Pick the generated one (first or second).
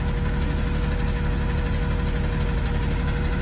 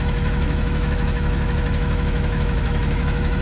second